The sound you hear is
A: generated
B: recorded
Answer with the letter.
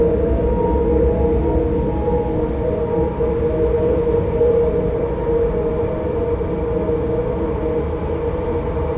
B